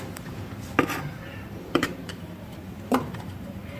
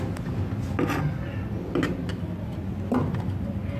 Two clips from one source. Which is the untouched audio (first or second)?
second